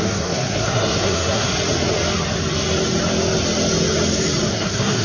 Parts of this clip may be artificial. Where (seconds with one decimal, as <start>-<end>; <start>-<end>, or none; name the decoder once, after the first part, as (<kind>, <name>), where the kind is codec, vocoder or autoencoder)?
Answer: 0.0-1.5 (codec, SNAC); 4.5-5.0